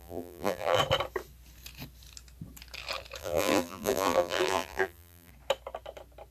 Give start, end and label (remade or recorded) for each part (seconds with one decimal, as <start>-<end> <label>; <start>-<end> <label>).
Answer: 0.0-0.8 remade; 0.8-3.2 recorded; 3.2-5.3 remade; 5.3-6.3 recorded